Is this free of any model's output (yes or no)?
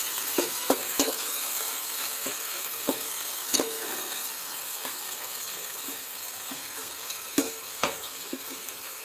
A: no